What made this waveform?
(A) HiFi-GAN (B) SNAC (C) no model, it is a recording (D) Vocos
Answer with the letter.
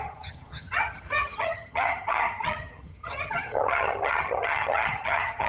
A